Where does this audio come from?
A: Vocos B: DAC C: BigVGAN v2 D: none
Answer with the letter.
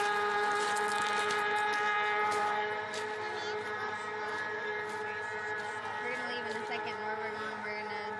D